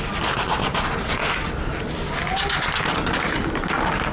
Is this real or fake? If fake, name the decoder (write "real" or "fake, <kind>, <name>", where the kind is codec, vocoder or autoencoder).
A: real